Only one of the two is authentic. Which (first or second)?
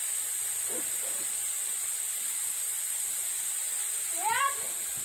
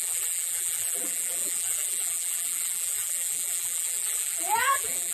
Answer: first